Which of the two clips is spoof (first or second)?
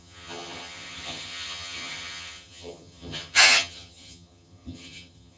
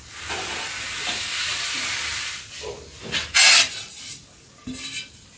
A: first